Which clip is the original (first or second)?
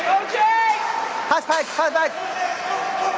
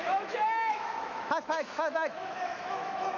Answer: first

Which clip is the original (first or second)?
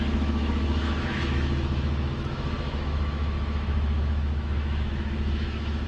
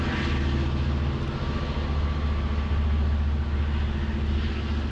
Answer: second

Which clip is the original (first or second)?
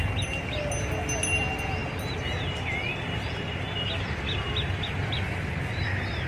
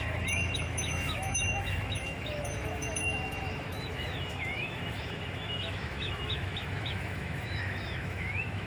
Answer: first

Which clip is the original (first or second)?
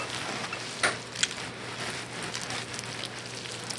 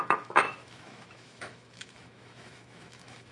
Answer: first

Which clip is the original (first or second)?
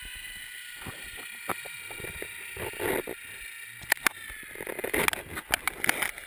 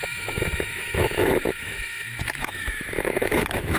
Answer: first